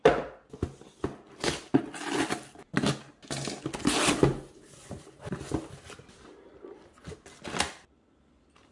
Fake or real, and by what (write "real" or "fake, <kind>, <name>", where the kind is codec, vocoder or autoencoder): real